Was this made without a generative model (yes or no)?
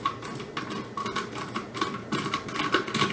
yes